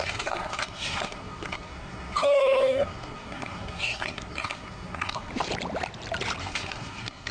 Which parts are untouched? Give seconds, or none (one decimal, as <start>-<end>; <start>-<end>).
5.3-6.4